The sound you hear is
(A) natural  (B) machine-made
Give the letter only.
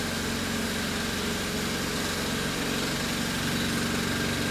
A